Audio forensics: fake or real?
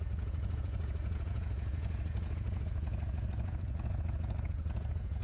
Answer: fake